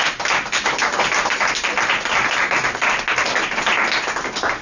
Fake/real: real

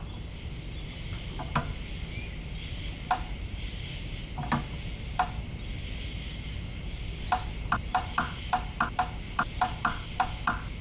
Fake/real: fake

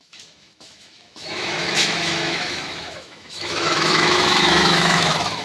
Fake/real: fake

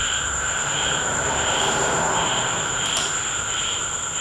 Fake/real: fake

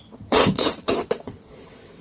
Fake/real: fake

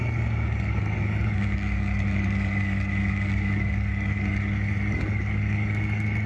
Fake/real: fake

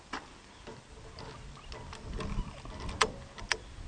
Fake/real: real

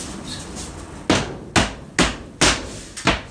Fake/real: real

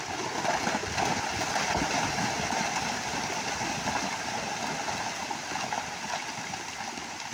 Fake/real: real